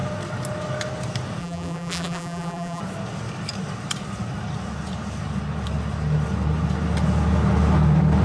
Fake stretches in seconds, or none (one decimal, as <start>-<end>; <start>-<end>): 1.4-2.8